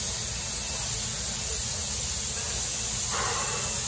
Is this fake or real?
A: real